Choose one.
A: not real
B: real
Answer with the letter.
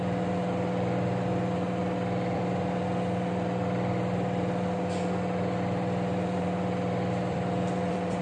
A